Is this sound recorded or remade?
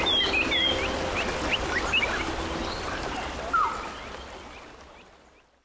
recorded